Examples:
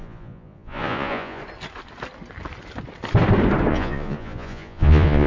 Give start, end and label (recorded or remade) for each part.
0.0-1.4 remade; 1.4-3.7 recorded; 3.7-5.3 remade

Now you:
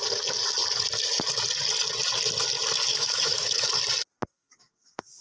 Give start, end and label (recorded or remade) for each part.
0.0-2.9 recorded; 2.9-3.7 remade; 3.7-4.3 recorded; 4.3-5.2 remade

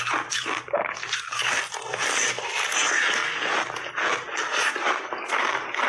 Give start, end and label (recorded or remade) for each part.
0.0-0.8 recorded; 0.8-1.6 remade; 1.6-4.8 recorded; 4.8-5.5 remade; 5.5-5.9 recorded

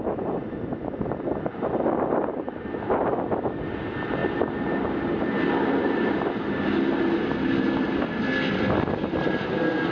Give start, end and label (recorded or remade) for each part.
0.0-9.9 recorded

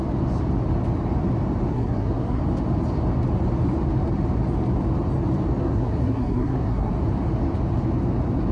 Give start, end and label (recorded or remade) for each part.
0.0-1.7 recorded; 1.7-2.4 remade; 2.4-5.6 recorded; 5.6-6.9 remade; 6.9-8.5 recorded